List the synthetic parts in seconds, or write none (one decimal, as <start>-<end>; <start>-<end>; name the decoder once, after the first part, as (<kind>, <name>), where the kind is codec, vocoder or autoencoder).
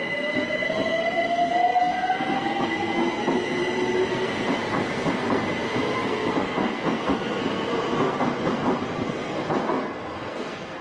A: 0.0-3.6 (codec, SNAC); 4.1-10.8